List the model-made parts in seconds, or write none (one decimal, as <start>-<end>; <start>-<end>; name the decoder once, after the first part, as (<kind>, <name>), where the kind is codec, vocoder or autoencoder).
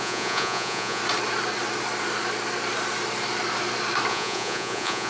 0.0-1.0 (vocoder, Vocos); 4.1-5.1